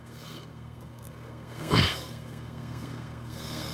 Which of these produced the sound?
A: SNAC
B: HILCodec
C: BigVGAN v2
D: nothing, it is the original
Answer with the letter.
A